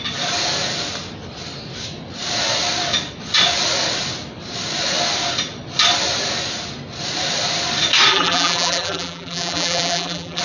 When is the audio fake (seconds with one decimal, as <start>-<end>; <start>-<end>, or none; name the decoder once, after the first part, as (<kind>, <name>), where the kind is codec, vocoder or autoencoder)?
8.1-10.4 (vocoder, BigVGAN v2)